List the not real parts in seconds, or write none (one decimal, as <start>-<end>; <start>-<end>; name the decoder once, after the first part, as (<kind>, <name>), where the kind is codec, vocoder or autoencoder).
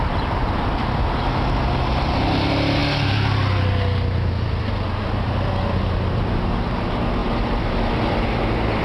7.2-8.4 (vocoder, BigVGAN v2)